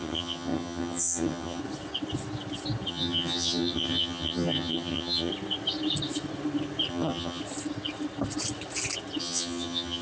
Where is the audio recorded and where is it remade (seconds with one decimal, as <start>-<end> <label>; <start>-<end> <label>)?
0.0-1.6 remade; 1.6-2.9 recorded; 2.9-5.3 remade; 5.3-6.9 recorded; 6.9-7.4 remade; 7.4-9.2 recorded; 9.2-10.0 remade